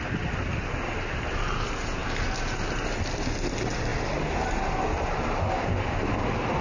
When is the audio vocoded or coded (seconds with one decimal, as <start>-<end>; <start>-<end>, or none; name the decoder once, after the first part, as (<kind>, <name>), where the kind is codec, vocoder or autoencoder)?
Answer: none